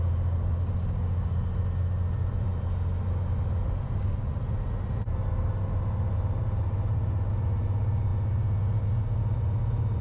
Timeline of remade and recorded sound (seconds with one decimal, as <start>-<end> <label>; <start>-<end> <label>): 0.0-10.0 recorded